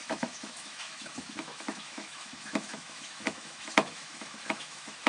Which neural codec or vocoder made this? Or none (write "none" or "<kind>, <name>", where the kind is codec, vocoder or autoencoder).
autoencoder, DAC-VAE